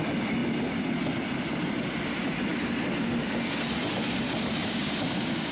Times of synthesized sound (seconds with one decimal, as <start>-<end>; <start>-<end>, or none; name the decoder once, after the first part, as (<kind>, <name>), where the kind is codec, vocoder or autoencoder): 4.6-5.5 (codec, DAC)